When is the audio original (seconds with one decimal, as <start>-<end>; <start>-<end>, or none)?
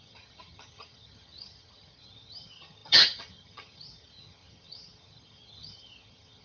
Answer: none